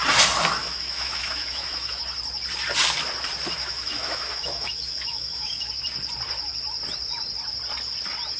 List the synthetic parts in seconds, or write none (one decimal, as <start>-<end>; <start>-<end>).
0.6-2.0; 3.6-5.7